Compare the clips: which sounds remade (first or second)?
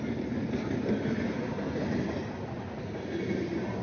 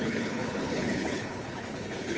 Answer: second